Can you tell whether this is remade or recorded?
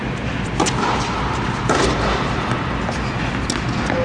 recorded